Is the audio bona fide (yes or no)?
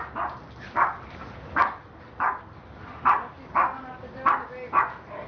yes